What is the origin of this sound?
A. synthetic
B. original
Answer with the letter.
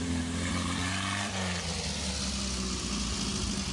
B